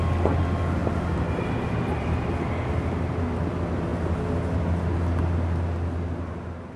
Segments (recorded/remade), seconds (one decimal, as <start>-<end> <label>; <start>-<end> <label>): 0.0-6.8 recorded